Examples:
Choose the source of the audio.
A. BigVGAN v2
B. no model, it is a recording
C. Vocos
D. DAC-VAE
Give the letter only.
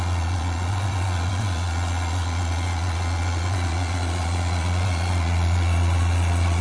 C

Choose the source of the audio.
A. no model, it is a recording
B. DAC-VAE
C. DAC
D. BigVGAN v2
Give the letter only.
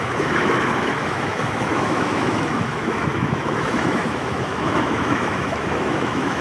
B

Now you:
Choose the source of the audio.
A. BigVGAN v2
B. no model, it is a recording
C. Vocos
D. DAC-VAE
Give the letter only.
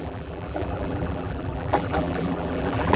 A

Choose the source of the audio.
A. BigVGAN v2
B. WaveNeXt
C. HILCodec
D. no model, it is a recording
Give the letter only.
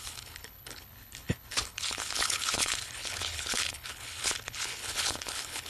C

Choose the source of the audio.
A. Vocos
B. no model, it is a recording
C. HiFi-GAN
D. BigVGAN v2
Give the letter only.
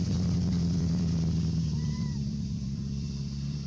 D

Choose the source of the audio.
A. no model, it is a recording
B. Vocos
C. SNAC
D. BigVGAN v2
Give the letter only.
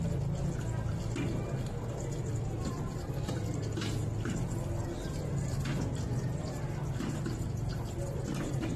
A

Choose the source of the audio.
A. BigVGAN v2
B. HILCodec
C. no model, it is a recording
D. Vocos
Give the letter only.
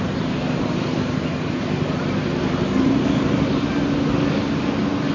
C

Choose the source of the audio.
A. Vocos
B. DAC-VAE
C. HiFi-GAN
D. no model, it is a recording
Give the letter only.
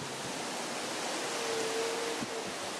D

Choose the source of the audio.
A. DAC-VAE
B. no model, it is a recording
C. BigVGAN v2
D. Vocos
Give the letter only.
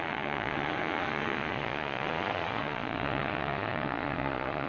D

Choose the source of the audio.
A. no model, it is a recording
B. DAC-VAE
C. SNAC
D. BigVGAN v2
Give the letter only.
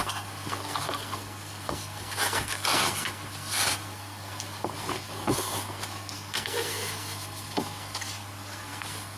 C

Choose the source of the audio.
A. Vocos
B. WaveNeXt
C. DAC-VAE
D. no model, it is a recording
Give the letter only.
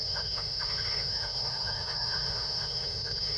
C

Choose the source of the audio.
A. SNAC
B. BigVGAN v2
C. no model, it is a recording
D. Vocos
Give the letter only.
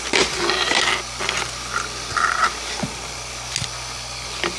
C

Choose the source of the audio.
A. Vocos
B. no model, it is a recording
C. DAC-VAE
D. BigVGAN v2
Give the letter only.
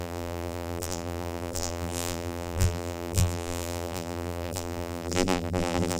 D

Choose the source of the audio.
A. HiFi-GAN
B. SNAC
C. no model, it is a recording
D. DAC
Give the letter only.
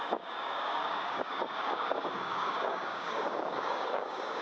D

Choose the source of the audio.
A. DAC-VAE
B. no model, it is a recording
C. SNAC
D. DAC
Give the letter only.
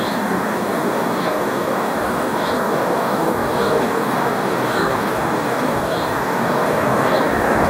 D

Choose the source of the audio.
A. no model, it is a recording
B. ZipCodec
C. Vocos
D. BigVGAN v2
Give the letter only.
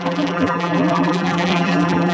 D